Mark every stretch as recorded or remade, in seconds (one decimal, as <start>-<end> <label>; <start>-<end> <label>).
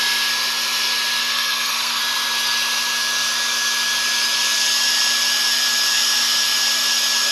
0.0-1.2 recorded; 1.2-2.0 remade; 2.0-7.3 recorded